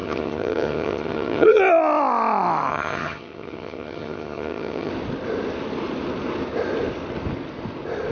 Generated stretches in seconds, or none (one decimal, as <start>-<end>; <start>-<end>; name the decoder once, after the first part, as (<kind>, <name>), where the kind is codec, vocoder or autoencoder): 0.0-1.6 (vocoder, HiFi-GAN); 2.7-4.9